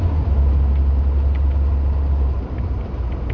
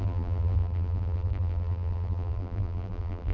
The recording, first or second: first